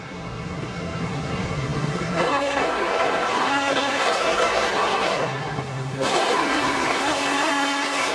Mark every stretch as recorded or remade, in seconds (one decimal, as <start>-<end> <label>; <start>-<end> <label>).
0.0-8.1 remade